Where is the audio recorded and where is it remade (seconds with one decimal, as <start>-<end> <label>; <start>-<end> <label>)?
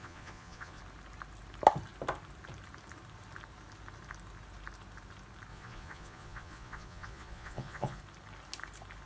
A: 0.0-0.8 remade; 0.8-5.5 recorded; 5.5-8.0 remade; 8.0-9.1 recorded